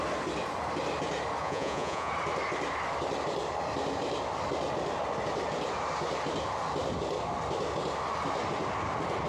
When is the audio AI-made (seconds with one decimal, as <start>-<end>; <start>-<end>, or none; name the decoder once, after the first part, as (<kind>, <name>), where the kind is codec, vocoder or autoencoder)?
1.4-2.1 (vocoder, Vocos)